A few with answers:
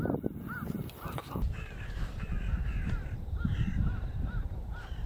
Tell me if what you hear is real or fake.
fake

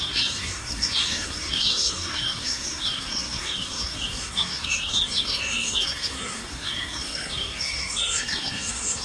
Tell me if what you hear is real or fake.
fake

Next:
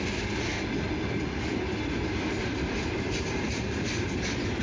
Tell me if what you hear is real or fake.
real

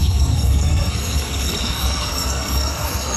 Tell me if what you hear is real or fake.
fake